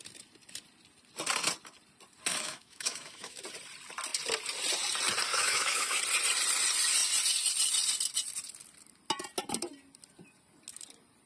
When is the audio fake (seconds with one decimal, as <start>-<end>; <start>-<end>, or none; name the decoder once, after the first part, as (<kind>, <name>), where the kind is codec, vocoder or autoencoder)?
2.3-3.4 (autoencoder, DAC-VAE); 5.3-6.0